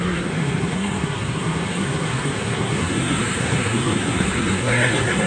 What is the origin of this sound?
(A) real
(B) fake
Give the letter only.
B